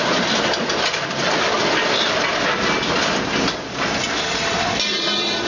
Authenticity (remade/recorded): recorded